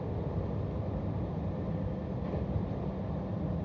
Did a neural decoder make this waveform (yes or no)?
no